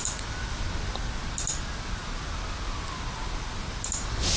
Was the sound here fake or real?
real